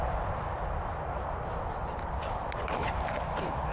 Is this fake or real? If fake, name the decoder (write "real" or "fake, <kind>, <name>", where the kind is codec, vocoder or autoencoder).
fake, vocoder, BigVGAN v2